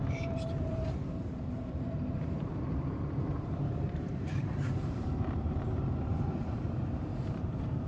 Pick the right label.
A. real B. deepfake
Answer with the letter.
B